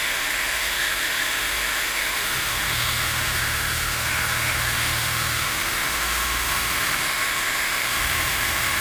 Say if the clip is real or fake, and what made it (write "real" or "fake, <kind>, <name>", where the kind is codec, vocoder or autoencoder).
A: fake, autoencoder, DAC-VAE